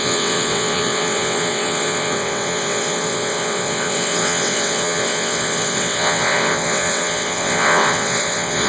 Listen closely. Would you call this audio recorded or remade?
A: remade